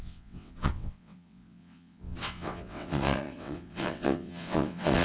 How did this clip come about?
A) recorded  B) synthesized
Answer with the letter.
B